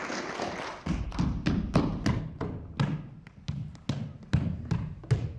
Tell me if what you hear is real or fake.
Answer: real